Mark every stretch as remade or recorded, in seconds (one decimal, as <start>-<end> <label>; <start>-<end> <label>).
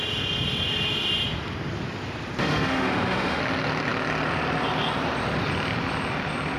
0.0-2.4 recorded; 2.4-3.4 remade; 3.4-6.6 recorded